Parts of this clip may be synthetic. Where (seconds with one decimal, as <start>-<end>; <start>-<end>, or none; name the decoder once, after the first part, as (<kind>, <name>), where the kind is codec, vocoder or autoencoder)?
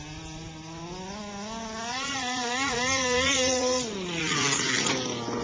1.9-4.9 (vocoder, Vocos)